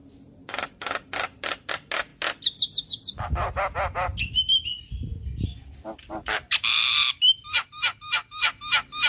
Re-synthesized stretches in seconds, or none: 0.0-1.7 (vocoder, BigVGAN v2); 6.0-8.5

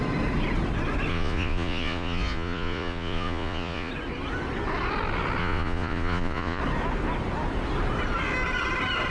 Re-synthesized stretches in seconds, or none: 1.1-3.9 (vocoder, Vocos); 5.4-6.6

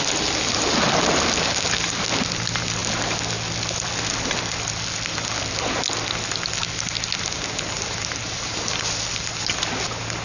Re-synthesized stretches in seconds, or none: none